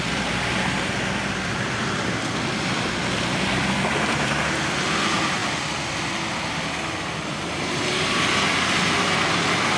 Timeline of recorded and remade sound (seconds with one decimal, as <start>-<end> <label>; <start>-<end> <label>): 0.0-9.8 recorded